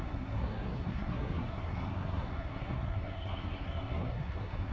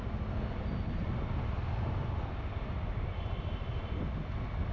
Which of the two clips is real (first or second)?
second